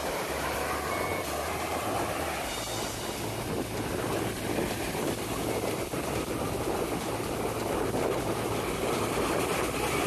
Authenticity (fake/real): real